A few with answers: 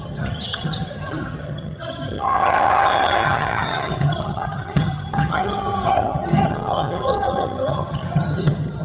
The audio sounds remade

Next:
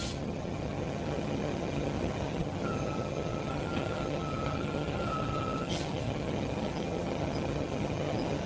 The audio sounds remade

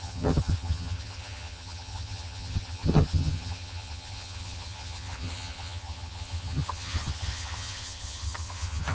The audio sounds remade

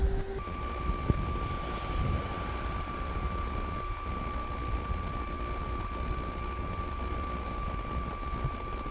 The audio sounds recorded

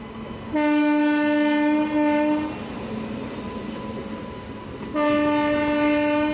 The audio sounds recorded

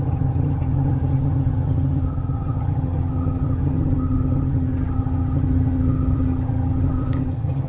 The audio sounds remade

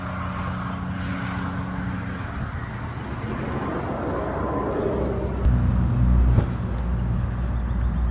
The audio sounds recorded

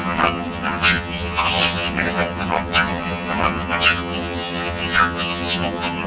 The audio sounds remade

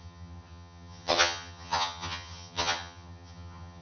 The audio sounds remade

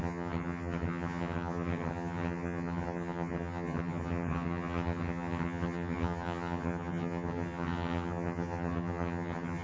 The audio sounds remade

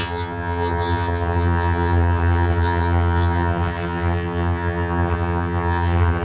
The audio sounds remade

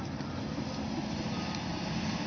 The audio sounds recorded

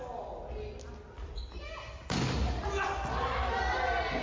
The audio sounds recorded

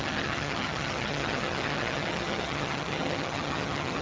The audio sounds remade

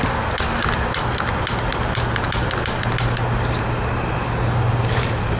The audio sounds recorded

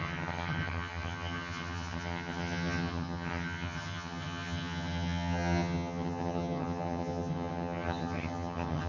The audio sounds remade